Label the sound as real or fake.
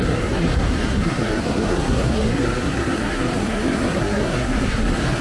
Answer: fake